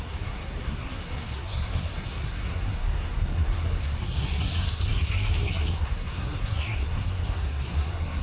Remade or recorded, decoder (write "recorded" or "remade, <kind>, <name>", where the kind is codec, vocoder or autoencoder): remade, codec, SNAC